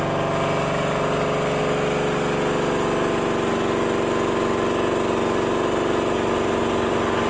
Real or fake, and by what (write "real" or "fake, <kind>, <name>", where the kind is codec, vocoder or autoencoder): real